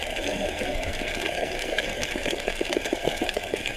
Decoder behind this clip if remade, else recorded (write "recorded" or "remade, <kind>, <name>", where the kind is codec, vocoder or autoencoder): remade, codec, SNAC